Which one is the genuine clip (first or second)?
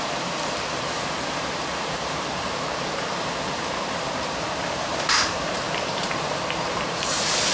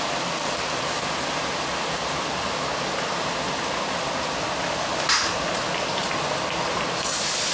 second